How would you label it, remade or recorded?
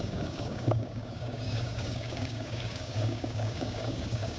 remade